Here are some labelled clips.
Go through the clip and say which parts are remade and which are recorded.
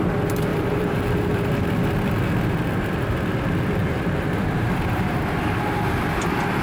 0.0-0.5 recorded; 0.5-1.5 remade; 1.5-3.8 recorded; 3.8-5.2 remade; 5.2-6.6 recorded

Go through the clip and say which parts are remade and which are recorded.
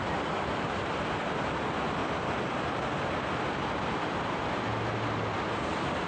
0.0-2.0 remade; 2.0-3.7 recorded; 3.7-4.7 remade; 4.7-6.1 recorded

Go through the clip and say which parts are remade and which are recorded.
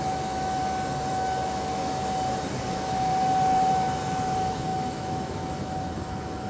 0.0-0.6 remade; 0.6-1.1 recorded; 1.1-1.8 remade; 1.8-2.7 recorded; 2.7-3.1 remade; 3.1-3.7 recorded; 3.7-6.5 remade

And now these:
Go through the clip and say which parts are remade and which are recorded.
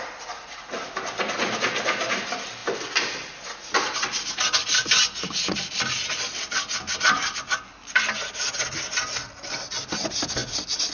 0.0-10.9 recorded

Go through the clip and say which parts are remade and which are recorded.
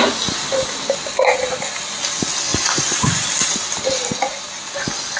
0.0-2.5 recorded; 2.5-3.3 remade; 3.3-5.2 recorded